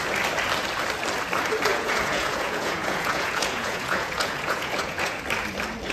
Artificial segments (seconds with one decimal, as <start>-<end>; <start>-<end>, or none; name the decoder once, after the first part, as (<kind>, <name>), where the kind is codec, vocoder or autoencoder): 1.7-5.2 (vocoder, Vocos)